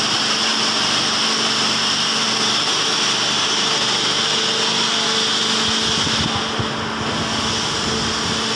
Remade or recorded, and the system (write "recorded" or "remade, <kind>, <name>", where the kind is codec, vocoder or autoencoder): recorded